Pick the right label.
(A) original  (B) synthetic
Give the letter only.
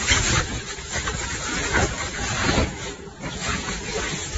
B